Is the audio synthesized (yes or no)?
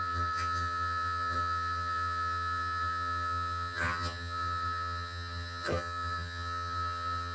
yes